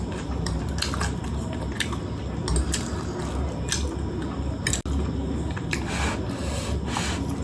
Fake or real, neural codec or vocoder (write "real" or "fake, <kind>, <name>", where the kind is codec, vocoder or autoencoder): real